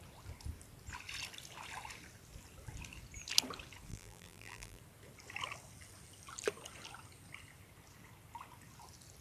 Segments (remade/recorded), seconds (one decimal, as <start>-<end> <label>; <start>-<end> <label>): 0.0-3.9 recorded; 3.9-4.8 remade; 4.8-9.2 recorded